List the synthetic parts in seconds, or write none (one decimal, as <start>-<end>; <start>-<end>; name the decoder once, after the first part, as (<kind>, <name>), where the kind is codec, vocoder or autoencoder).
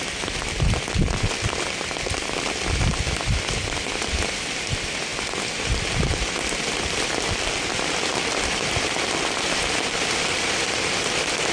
none